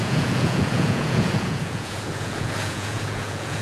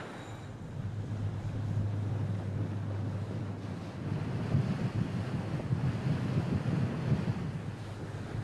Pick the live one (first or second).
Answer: second